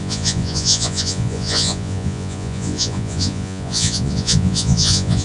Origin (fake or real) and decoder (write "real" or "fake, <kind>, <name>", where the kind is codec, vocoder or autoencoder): fake, vocoder, Vocos